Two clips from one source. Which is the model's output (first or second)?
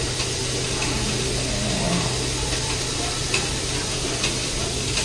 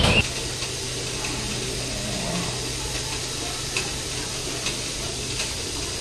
second